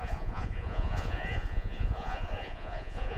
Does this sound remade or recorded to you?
remade